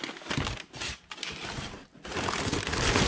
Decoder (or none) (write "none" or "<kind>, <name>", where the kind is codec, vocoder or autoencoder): none